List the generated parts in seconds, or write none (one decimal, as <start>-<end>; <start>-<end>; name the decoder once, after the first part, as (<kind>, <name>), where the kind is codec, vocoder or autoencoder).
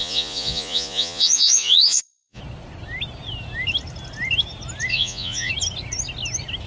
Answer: 0.0-2.4 (vocoder, Vocos); 4.9-5.5